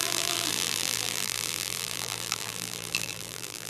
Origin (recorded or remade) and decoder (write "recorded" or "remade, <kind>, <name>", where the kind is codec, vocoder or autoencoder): remade, vocoder, BigVGAN v2